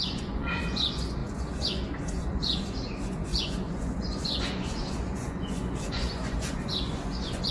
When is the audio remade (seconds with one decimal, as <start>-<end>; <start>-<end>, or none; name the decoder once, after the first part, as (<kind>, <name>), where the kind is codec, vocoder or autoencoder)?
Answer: 0.0-7.5 (vocoder, Vocos)